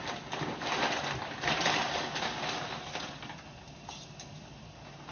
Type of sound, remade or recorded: recorded